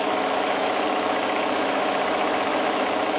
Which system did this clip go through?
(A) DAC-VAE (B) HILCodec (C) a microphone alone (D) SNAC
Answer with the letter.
A